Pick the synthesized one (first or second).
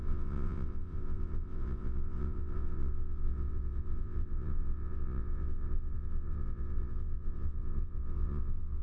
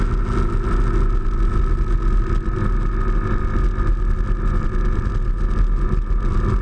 first